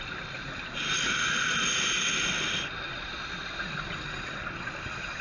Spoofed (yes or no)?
no